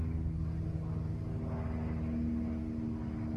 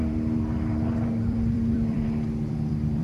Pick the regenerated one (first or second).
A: second